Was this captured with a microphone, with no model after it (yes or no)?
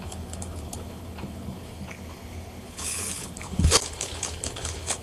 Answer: no